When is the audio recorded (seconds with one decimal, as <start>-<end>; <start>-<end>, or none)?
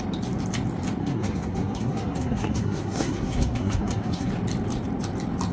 0.0-1.0; 4.3-5.5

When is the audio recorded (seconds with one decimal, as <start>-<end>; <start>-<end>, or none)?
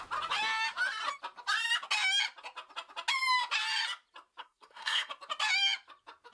0.0-4.4; 5.1-6.3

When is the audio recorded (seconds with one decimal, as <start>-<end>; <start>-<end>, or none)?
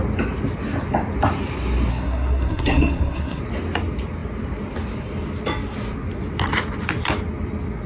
0.0-1.9; 3.4-7.9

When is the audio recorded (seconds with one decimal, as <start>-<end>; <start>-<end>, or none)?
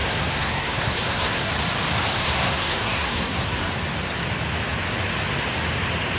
1.5-2.1; 3.7-6.2